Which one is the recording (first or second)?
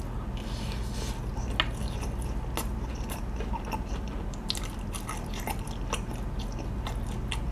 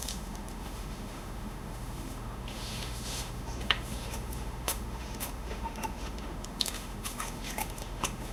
first